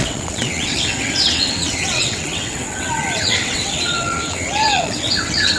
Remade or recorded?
remade